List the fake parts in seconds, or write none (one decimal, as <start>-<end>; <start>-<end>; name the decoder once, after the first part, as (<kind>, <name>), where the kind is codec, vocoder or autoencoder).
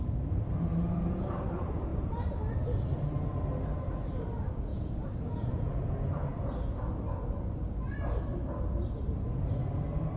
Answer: 1.9-2.4 (vocoder, Vocos); 4.7-6.8